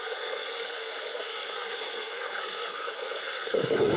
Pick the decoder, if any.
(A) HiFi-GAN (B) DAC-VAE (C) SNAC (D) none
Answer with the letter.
C